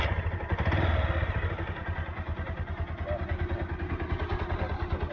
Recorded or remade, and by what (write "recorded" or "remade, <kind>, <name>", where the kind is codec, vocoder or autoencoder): recorded